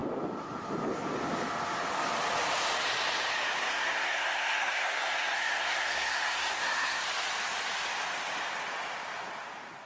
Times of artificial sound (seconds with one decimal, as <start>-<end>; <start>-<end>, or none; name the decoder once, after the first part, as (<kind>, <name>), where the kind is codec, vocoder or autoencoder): 3.7-7.0 (codec, SNAC)